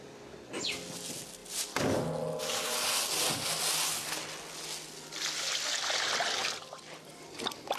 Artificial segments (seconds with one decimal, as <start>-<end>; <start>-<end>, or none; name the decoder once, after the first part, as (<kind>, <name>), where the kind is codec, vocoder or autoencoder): 6.4-7.1 (vocoder, BigVGAN v2)